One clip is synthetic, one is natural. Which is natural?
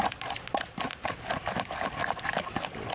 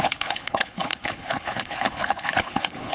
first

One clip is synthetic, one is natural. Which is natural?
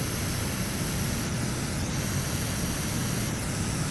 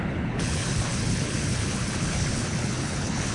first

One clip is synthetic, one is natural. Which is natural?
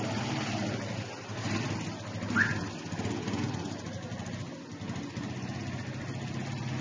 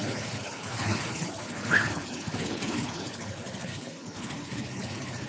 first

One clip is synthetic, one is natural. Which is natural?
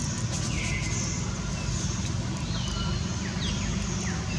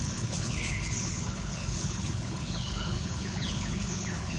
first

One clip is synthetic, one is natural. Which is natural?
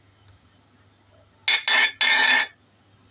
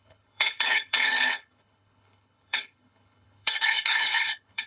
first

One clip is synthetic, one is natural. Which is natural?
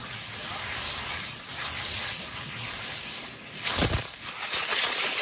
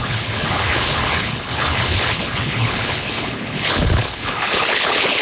first